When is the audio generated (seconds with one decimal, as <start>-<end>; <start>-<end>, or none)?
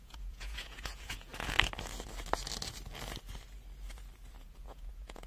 0.0-1.3; 4.4-5.3